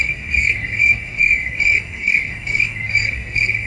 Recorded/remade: remade